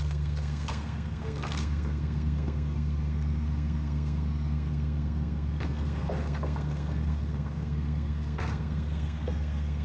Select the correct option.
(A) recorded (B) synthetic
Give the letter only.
B